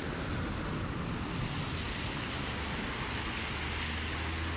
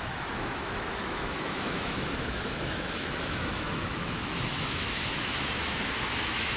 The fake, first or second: second